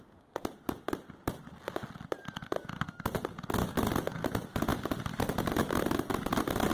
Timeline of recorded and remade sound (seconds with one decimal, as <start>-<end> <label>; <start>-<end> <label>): 0.0-6.7 recorded